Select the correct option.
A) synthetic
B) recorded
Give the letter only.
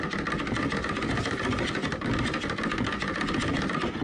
B